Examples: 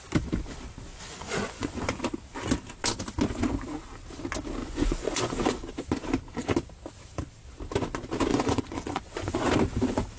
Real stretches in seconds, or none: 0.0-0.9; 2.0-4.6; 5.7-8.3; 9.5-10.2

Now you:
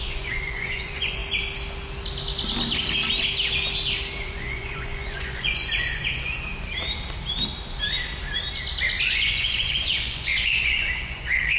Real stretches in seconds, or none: 1.2-4.2; 6.5-9.1

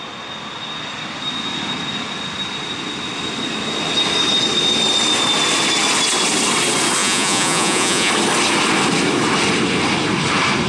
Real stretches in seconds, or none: 0.0-7.0; 8.1-10.7